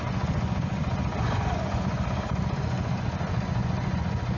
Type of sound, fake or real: fake